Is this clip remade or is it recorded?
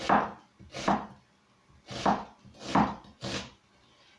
recorded